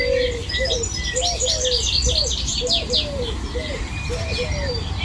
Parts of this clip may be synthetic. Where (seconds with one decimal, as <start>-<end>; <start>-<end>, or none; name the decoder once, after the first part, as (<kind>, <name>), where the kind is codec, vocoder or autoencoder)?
none